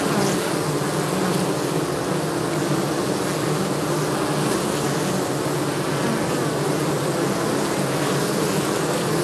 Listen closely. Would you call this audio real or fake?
real